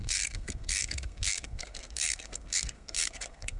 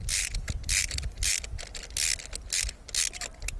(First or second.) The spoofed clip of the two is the first